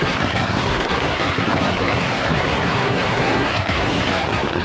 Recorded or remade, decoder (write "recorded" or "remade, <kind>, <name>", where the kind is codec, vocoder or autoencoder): remade, codec, SNAC